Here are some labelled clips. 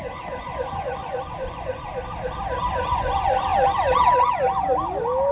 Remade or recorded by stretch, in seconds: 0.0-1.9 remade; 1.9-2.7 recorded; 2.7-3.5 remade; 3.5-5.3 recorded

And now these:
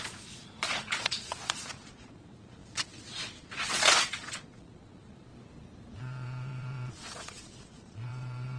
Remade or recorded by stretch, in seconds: 0.0-5.3 remade; 5.3-6.0 recorded; 6.0-8.6 remade

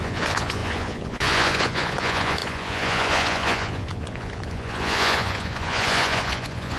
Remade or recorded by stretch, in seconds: 0.0-6.8 remade

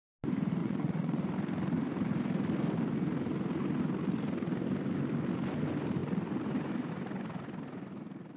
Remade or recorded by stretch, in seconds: 0.0-0.6 recorded; 0.6-1.2 remade; 1.2-8.4 recorded

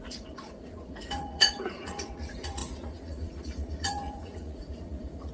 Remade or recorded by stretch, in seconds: 0.0-5.3 remade